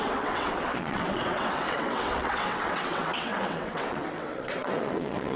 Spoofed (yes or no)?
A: yes